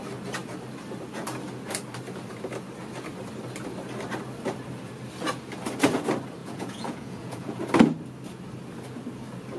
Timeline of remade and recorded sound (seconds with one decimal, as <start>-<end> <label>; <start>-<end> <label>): 0.0-6.4 recorded; 6.4-7.6 remade; 7.6-9.6 recorded